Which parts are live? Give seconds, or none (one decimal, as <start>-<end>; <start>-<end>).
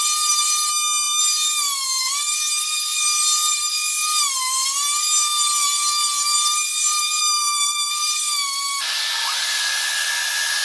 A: 0.0-0.7; 1.2-7.2; 7.9-10.6